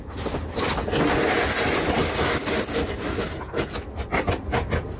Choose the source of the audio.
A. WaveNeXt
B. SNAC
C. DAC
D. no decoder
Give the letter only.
D